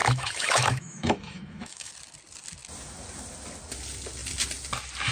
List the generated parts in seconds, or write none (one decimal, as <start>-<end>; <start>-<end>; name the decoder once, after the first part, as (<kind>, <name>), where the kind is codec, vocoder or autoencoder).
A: 0.0-1.9 (autoencoder, DAC-VAE)